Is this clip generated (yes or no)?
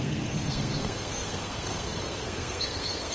yes